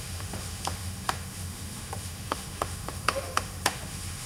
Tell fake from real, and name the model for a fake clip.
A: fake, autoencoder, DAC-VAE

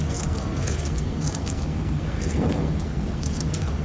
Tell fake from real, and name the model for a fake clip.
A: fake, codec, SNAC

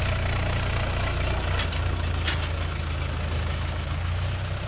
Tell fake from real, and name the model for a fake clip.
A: real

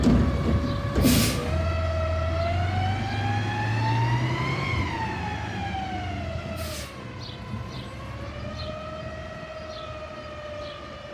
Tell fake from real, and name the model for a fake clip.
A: real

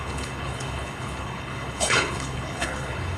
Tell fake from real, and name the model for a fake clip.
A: fake, codec, HILCodec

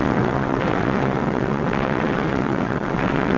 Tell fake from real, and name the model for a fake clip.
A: fake, vocoder, WaveNeXt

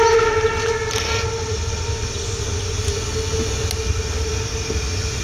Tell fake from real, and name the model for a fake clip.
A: real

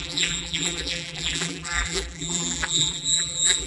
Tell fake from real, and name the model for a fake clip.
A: fake, vocoder, BigVGAN v2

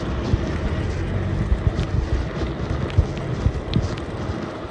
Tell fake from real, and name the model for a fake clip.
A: real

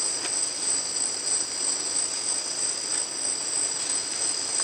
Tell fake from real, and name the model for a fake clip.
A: real